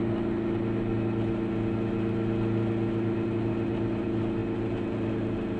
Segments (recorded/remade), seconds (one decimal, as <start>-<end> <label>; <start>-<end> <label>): 0.0-5.6 recorded